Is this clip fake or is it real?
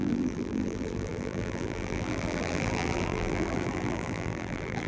fake